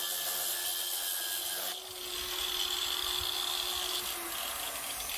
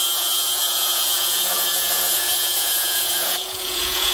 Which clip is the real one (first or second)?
first